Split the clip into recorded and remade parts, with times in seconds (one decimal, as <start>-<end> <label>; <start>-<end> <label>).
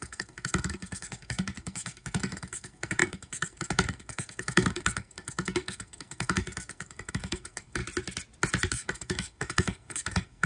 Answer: 0.0-7.8 remade; 7.8-8.7 recorded; 8.7-10.5 remade